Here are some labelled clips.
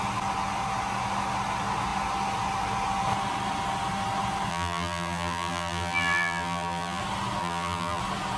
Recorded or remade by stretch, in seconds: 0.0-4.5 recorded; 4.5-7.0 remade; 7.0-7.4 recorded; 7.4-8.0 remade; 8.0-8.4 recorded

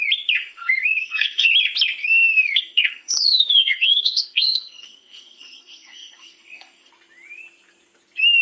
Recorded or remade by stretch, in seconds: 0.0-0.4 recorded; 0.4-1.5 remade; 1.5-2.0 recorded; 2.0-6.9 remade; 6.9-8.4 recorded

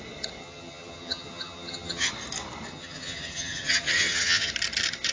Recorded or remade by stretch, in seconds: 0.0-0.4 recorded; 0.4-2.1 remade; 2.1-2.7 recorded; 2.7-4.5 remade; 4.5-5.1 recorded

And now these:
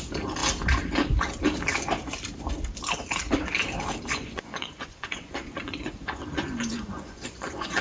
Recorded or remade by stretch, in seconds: 0.0-4.1 recorded; 4.1-7.8 remade

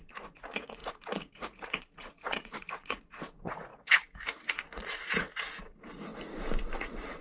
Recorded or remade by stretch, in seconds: 0.0-6.1 remade; 6.1-6.8 recorded; 6.8-7.2 remade